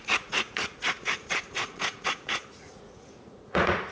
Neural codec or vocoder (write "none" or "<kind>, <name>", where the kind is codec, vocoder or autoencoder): vocoder, Vocos